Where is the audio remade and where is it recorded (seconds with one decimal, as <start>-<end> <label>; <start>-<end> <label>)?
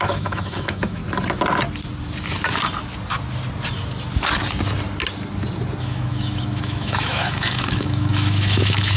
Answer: 0.0-1.0 remade; 1.0-5.8 recorded; 5.8-9.0 remade